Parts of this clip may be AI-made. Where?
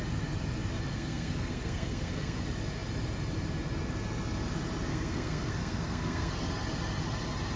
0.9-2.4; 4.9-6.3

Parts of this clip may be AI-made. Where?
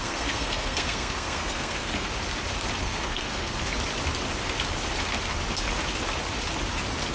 0.0-2.1; 2.8-3.6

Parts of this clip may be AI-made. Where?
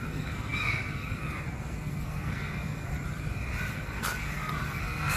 0.0-2.9; 3.7-5.2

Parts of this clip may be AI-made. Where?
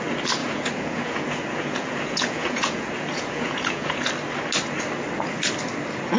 0.4-4.1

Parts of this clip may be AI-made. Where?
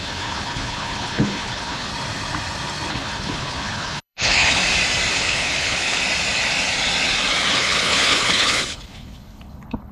0.0-1.9; 2.9-4.6; 5.1-6.0; 7.5-9.9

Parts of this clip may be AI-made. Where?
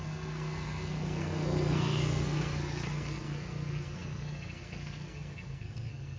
0.0-6.2